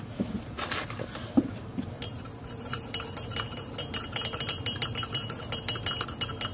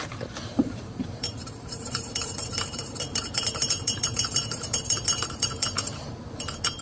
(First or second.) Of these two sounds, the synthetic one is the second